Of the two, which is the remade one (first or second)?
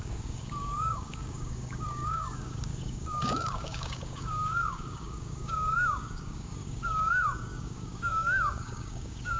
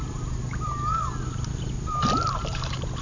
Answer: first